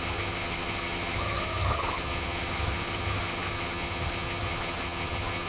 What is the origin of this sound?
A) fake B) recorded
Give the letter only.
A